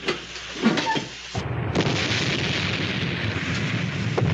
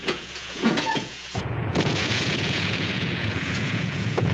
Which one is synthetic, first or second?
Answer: second